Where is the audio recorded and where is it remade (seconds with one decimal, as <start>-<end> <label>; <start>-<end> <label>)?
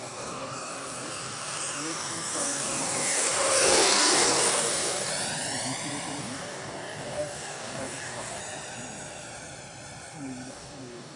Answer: 0.0-5.1 remade; 5.1-6.2 recorded; 6.2-8.4 remade; 8.4-10.5 recorded; 10.5-11.2 remade